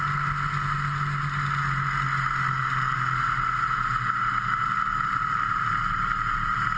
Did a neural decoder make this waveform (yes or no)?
no